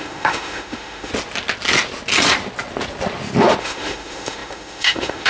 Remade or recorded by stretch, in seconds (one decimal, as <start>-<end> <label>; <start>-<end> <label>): 0.0-1.1 remade; 1.1-3.6 recorded; 3.6-5.3 remade